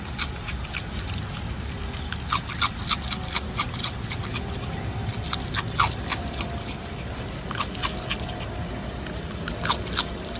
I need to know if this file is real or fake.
real